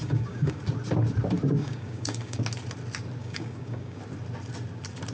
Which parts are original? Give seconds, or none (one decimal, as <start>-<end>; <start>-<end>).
0.6-1.6; 2.4-3.2; 4.0-5.1